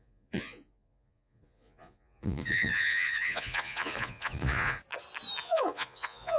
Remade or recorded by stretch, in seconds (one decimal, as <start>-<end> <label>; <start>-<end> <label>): 0.0-4.8 remade; 4.8-5.4 recorded; 5.4-6.4 remade